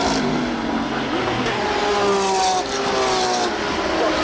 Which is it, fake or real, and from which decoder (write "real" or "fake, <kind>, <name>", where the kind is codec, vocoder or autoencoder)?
real